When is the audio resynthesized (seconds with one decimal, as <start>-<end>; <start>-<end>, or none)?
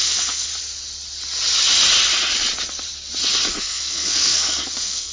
0.0-0.5; 3.6-5.1